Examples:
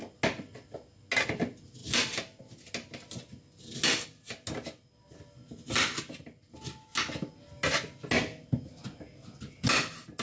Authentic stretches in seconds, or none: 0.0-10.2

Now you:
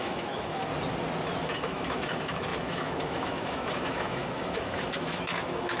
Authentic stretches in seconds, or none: 0.7-1.5

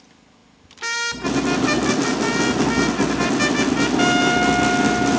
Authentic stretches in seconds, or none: 0.0-5.2

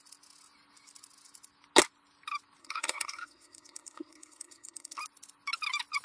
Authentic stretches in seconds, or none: 0.0-2.6; 5.0-6.0

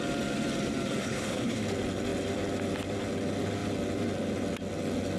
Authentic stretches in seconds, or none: 0.0-1.0; 1.6-5.2

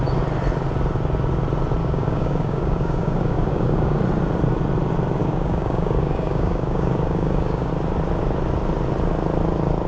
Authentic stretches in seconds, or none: 0.0-1.8; 4.0-5.2; 7.7-9.9

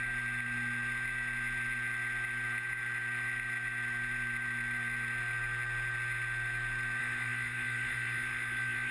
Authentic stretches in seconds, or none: 0.0-7.0